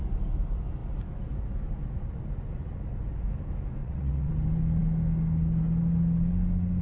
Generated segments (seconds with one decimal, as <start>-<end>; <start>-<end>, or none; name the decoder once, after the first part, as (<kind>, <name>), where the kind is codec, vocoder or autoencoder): 3.8-4.3 (vocoder, WaveNeXt)